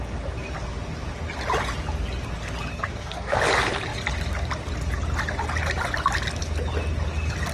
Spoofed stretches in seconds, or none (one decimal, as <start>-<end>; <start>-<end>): 2.7-3.4